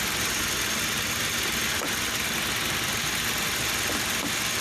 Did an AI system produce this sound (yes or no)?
no